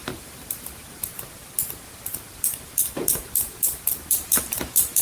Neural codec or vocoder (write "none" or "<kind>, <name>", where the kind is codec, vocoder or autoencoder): vocoder, BigVGAN v2